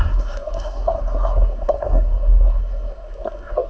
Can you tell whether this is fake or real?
fake